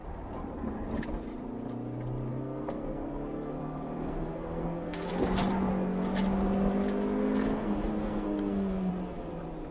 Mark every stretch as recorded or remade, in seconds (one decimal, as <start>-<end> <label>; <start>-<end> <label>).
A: 0.0-2.3 recorded; 2.3-5.1 remade; 5.1-7.2 recorded; 7.2-8.9 remade; 8.9-9.7 recorded